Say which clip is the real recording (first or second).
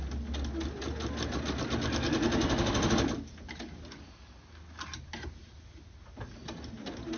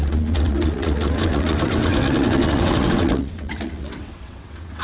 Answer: first